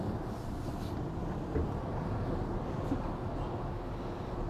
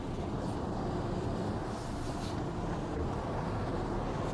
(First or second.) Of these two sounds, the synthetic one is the first